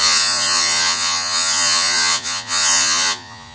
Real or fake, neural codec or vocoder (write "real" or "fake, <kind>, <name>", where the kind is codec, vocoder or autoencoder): fake, vocoder, Vocos